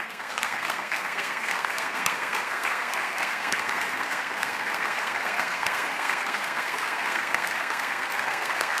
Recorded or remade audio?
remade